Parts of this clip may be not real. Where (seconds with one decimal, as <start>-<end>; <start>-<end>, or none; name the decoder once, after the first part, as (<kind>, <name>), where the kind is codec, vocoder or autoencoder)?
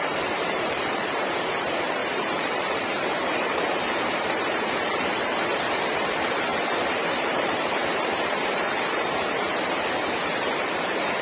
0.0-11.2 (vocoder, BigVGAN v2)